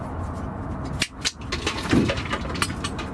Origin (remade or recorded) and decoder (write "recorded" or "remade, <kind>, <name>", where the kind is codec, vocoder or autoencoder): recorded